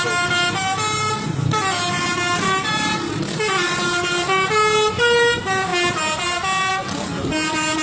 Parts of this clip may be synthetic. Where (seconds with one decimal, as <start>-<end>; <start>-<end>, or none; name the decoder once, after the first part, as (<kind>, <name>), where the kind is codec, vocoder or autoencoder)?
none